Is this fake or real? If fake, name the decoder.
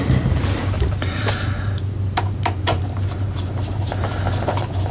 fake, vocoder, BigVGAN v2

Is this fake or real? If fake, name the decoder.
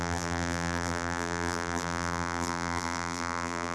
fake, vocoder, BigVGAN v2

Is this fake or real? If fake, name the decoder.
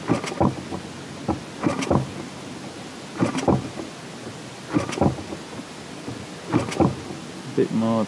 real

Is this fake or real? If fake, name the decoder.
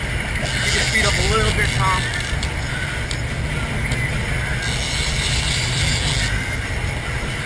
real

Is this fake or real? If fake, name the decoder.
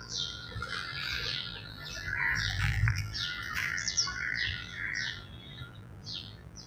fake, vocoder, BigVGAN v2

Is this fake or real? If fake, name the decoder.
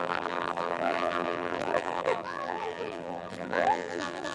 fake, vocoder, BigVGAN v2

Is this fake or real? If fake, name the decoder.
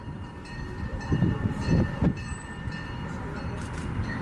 fake, vocoder, BigVGAN v2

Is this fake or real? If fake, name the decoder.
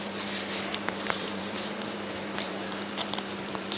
fake, vocoder, BigVGAN v2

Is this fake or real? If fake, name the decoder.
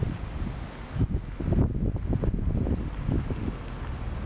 real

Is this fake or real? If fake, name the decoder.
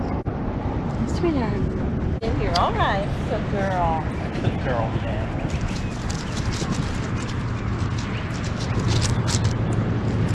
real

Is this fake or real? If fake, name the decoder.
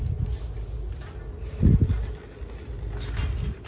real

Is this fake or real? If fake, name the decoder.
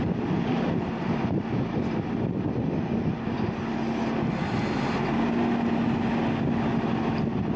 real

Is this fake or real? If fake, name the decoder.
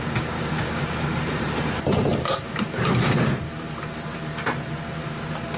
fake, vocoder, BigVGAN v2